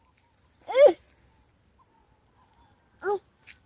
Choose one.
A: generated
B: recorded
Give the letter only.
B